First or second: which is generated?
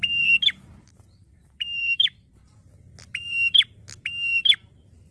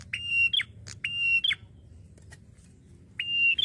first